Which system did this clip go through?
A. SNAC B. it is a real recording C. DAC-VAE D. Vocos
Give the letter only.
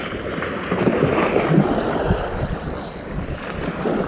B